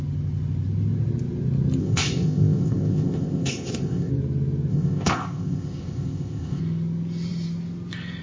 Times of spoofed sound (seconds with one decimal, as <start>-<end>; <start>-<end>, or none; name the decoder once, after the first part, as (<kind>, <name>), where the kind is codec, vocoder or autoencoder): 1.8-4.1 (codec, ZipCodec); 4.7-6.6